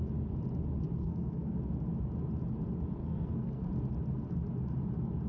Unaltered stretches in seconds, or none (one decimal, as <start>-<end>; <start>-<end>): 0.0-1.0; 1.6-3.0; 3.7-5.3